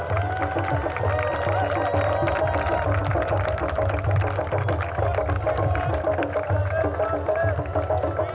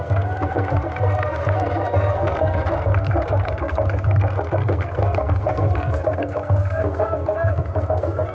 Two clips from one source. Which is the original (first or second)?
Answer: first